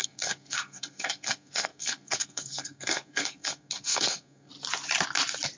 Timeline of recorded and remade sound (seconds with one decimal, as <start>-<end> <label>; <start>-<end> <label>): 0.0-4.5 remade; 4.5-5.6 recorded